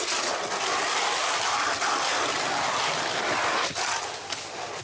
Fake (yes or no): no